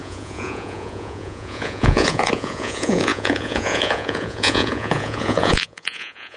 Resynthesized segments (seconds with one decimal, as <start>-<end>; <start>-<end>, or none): 0.0-6.4